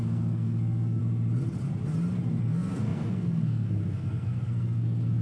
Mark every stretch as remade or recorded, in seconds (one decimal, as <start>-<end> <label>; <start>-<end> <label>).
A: 0.0-1.0 remade; 1.0-2.4 recorded; 2.4-5.2 remade